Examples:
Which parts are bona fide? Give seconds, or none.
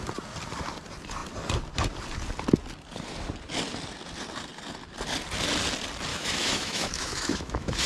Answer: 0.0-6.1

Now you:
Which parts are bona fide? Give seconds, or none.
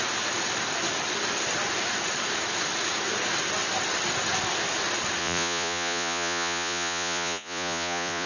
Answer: 0.0-5.2